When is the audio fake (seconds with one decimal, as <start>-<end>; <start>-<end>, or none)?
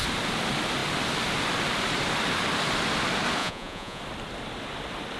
3.4-4.0